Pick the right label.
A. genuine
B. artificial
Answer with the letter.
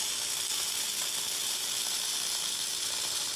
A